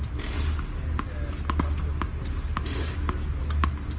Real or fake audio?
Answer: real